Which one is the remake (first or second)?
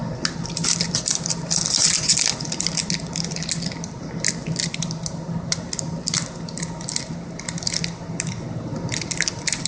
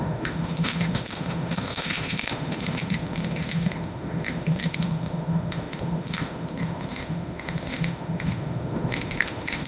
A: second